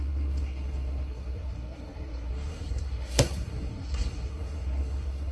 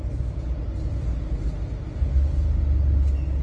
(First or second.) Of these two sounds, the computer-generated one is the first